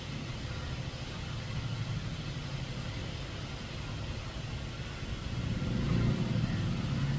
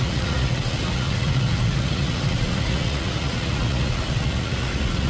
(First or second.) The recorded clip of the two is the first